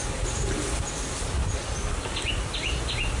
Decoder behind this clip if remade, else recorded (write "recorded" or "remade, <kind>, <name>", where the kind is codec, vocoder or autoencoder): recorded